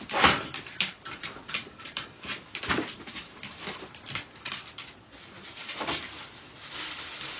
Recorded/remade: recorded